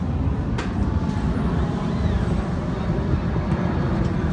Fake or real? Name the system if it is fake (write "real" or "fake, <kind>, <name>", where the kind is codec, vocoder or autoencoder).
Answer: real